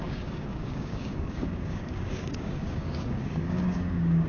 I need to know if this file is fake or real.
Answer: fake